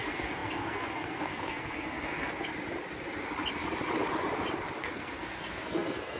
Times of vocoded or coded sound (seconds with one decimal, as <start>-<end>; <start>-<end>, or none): 0.0-2.5; 4.8-6.2